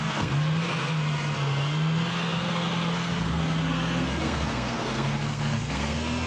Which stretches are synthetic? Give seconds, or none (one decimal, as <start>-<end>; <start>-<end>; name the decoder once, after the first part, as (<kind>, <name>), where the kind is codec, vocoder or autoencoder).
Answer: 0.0-6.3 (codec, SNAC)